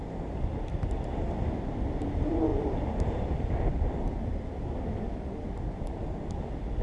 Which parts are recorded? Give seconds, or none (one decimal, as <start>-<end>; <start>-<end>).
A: 0.0-6.8